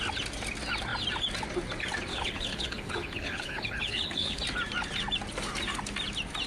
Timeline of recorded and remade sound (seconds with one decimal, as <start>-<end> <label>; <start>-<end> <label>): 0.0-2.1 recorded; 2.1-4.4 remade; 4.4-6.5 recorded